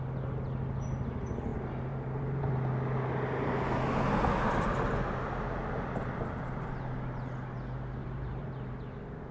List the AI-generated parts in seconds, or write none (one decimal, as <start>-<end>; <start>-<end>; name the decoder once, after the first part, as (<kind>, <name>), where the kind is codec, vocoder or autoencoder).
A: 1.5-2.5 (vocoder, BigVGAN v2); 8.0-8.7